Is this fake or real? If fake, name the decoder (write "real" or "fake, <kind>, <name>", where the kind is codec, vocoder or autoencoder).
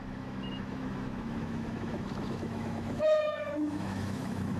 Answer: fake, autoencoder, DAC-VAE